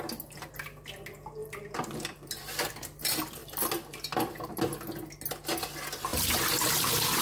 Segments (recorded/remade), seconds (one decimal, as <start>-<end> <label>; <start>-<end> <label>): 0.0-1.4 recorded; 1.4-2.7 remade; 2.7-3.4 recorded; 3.4-4.5 remade; 4.5-6.1 recorded; 6.1-7.2 remade